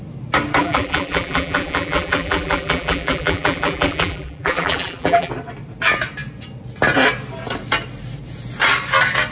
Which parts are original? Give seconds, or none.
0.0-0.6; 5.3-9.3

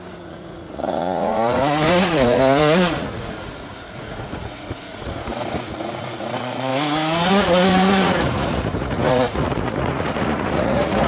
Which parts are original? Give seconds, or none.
6.7-7.3

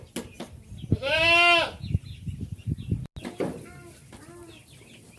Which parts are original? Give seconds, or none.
0.0-5.2

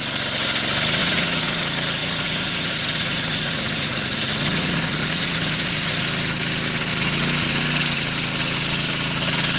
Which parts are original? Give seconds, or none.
0.0-1.0; 1.6-2.0; 6.0-9.6

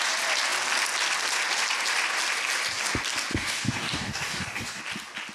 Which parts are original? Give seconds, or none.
0.0-3.3; 4.8-5.3

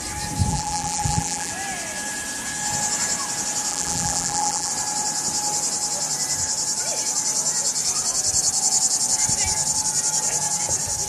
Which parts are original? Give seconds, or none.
0.0-0.5; 1.5-3.7; 4.7-11.1

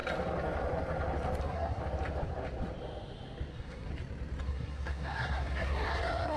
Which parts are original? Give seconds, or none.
0.0-1.4; 1.8-3.5; 3.9-4.4